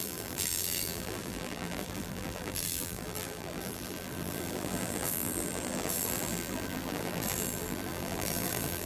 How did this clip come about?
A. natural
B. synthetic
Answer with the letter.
B